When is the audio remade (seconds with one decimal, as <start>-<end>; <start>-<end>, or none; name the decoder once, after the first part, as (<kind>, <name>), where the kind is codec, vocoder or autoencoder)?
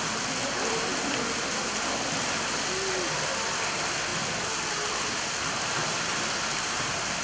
none